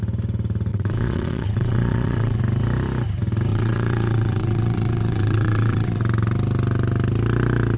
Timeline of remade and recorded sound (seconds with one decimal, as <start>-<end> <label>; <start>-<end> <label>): 0.0-0.7 recorded; 0.7-2.4 remade; 2.4-3.5 recorded; 3.5-6.0 remade; 6.0-7.8 recorded

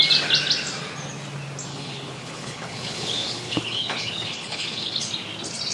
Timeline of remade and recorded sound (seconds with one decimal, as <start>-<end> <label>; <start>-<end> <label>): 0.0-1.7 recorded; 1.7-5.1 remade; 5.1-5.7 recorded

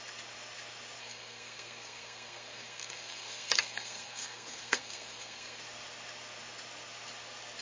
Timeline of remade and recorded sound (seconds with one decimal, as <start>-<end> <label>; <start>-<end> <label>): 0.0-1.0 recorded; 1.0-5.6 remade; 5.6-7.6 recorded

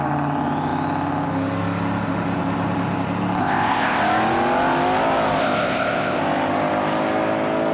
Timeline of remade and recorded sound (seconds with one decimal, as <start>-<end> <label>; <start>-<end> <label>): 0.0-3.4 recorded; 3.4-4.0 remade; 4.0-5.4 recorded; 5.4-6.2 remade; 6.2-7.7 recorded